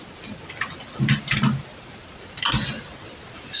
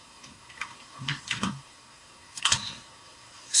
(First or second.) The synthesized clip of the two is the second